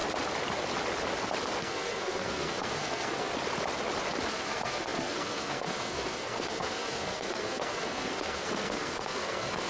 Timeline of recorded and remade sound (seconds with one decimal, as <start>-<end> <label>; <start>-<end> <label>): 0.0-1.6 recorded; 1.6-3.3 remade; 3.3-4.3 recorded; 4.3-9.7 remade

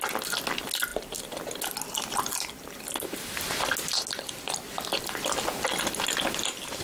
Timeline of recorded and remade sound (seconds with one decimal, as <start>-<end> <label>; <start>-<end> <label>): 0.0-6.8 recorded

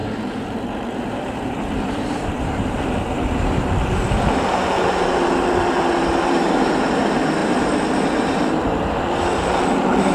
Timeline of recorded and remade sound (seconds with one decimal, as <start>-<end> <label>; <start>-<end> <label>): 0.0-3.7 remade; 3.7-7.4 recorded; 7.4-9.0 remade; 9.0-10.1 recorded

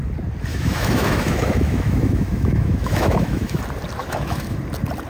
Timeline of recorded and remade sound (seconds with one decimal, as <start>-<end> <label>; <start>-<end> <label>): 0.0-0.5 recorded; 0.5-3.6 remade; 3.6-4.0 recorded; 4.0-4.6 remade; 4.6-5.1 recorded